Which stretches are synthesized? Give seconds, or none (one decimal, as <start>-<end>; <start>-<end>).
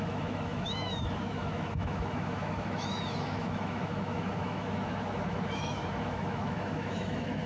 0.0-7.5